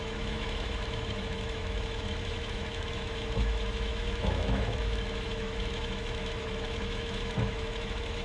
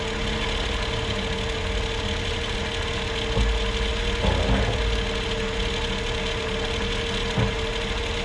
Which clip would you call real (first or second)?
second